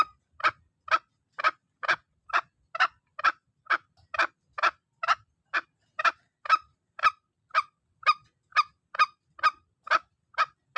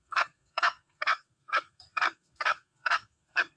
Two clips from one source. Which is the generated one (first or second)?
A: second